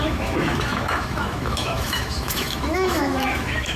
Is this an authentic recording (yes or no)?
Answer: no